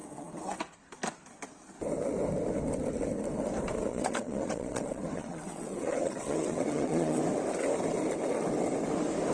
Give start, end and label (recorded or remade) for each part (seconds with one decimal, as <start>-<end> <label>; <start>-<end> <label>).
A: 0.0-0.6 remade; 0.6-3.9 recorded; 3.9-7.2 remade; 7.2-9.3 recorded